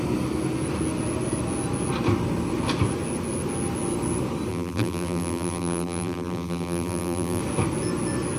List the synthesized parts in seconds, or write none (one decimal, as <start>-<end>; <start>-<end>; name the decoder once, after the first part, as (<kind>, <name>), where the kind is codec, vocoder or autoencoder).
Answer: 4.5-7.4 (vocoder, BigVGAN v2)

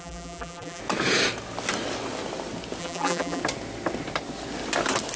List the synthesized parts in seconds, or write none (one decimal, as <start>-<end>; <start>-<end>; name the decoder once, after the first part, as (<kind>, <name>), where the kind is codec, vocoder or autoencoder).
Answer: 0.0-0.8 (vocoder, BigVGAN v2); 2.8-3.4

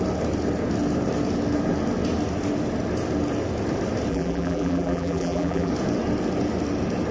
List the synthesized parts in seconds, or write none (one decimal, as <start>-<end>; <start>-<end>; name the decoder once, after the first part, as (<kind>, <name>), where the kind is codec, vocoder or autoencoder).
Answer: 4.1-5.7 (vocoder, BigVGAN v2)

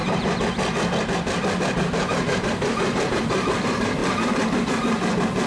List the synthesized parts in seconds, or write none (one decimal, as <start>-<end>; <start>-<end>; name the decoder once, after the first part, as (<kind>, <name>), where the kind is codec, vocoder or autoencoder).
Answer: 1.9-5.5 (vocoder, BigVGAN v2)

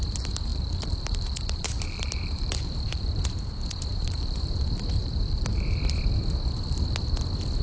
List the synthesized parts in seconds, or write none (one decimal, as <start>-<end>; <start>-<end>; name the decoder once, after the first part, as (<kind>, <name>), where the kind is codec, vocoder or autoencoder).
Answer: 0.5-3.0 (vocoder, BigVGAN v2); 3.9-4.6; 5.0-5.8

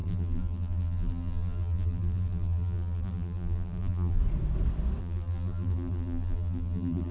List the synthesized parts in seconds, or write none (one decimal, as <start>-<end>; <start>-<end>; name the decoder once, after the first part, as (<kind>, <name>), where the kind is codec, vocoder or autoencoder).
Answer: 0.0-4.2 (vocoder, BigVGAN v2); 5.0-7.1